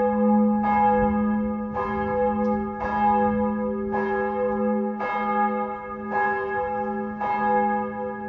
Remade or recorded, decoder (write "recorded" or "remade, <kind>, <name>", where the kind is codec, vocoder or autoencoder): recorded